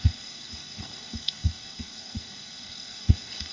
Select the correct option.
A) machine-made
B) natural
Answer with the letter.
A